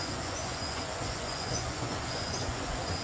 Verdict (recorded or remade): remade